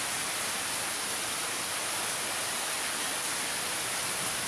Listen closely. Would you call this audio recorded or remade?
recorded